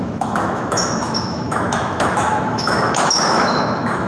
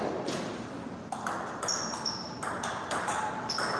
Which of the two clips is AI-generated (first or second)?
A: first